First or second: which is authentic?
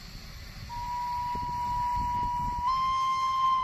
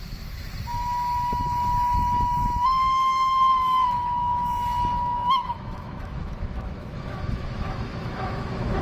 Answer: first